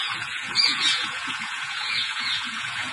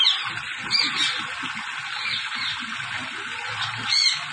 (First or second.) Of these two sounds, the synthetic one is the first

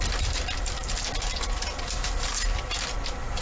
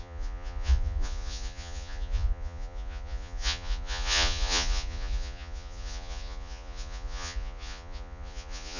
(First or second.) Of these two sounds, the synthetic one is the second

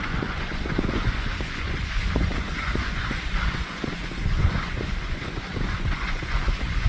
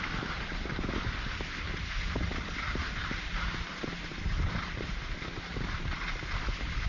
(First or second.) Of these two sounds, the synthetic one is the first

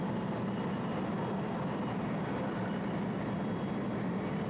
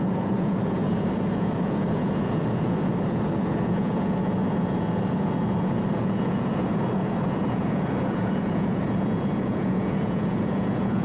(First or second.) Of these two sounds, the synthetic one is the second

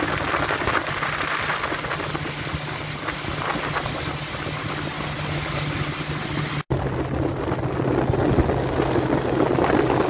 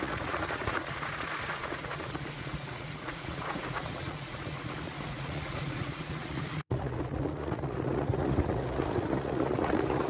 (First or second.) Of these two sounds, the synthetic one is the second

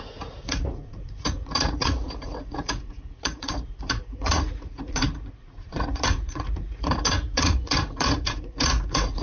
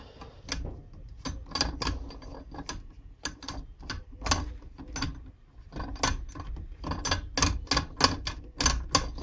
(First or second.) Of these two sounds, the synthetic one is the first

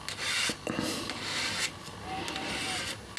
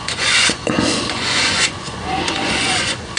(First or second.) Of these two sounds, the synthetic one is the second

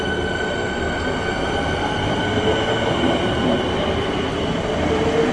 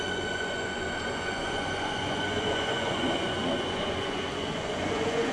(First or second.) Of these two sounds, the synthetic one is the second